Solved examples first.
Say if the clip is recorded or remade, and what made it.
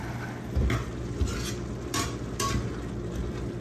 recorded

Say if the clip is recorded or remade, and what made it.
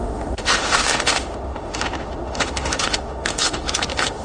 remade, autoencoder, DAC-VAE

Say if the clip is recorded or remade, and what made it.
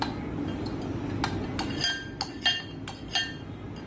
recorded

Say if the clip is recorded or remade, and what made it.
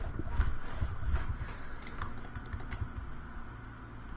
recorded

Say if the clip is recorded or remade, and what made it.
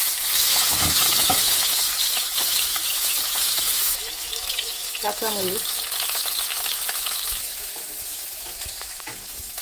remade, autoencoder, DAC-VAE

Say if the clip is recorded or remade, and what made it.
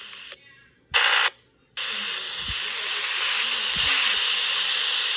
recorded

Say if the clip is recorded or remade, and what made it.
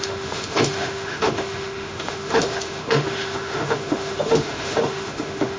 remade, autoencoder, DAC-VAE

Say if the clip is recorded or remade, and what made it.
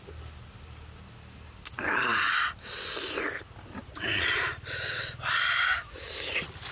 recorded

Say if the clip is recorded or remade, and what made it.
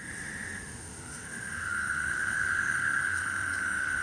remade, autoencoder, DAC-VAE